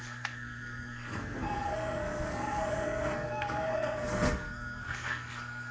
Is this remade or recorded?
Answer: remade